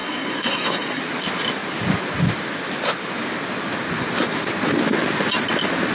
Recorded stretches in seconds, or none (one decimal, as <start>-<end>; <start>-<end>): 1.0-5.9